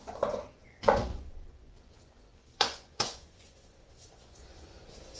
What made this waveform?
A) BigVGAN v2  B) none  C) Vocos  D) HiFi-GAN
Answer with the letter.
C